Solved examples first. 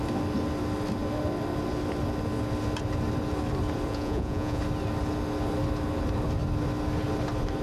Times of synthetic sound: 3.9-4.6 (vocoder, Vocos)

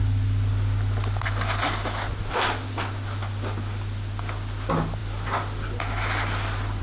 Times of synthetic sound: none

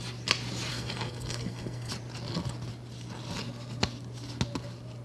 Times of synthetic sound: 0.7-1.9 (codec, SNAC)

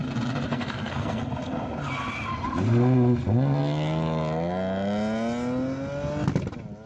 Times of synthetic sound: 0.5-1.2 (codec, SNAC)

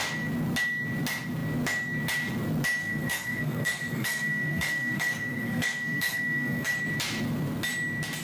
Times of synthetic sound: 2.8-6.7 (codec, SNAC)

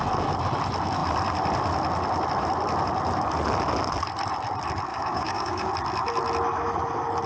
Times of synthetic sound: 4.9-5.7 (codec, DAC)